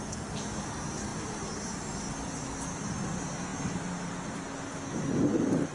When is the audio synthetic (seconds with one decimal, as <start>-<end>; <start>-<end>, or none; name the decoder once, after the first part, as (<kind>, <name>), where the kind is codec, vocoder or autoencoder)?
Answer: none